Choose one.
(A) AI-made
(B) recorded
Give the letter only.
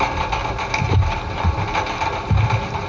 B